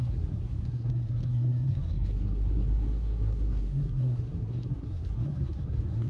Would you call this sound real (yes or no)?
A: no